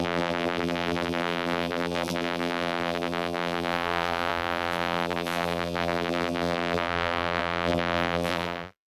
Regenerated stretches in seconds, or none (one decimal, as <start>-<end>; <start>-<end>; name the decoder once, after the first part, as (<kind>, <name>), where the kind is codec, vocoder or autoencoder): 0.0-9.0 (vocoder, BigVGAN v2)